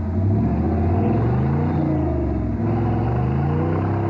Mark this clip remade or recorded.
recorded